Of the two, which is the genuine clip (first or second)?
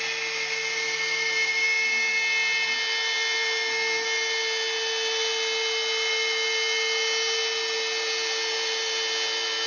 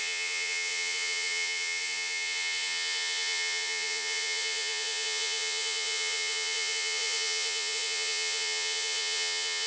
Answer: first